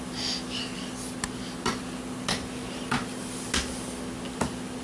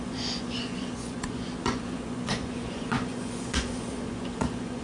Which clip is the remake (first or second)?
second